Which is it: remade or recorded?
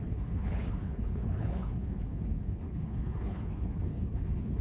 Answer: remade